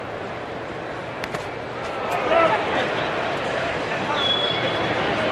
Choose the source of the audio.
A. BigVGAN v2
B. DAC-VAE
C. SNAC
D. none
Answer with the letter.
A